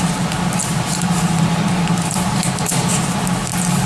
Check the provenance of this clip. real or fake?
real